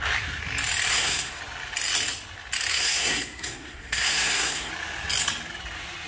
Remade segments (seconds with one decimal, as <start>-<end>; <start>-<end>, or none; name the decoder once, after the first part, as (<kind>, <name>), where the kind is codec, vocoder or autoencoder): 0.9-1.4 (codec, SNAC); 2.7-4.7